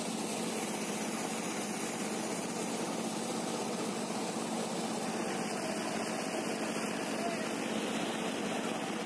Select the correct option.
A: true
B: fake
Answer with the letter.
A